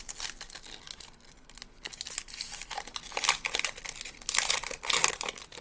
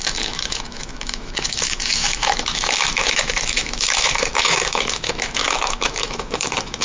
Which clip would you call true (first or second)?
first